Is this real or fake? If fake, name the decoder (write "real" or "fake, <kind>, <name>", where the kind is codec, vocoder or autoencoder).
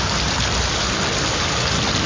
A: real